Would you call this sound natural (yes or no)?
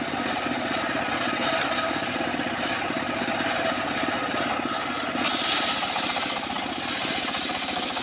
yes